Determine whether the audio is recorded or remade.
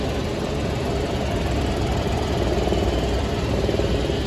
recorded